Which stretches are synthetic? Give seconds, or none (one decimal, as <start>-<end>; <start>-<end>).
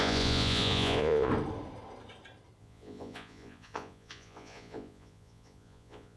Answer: 0.0-1.3; 2.6-6.2